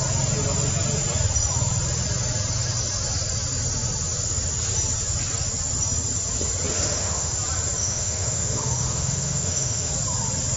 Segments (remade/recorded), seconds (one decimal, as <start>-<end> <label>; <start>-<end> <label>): 0.0-6.7 recorded; 6.7-7.3 remade; 7.3-7.8 recorded; 7.8-9.9 remade; 9.9-10.6 recorded